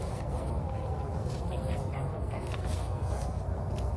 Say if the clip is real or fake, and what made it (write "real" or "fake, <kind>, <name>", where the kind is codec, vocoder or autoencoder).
fake, codec, SNAC